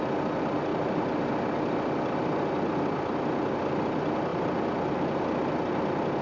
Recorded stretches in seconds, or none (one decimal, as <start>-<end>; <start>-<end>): 0.0-0.7; 1.3-6.2